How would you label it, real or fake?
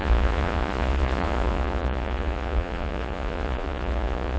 fake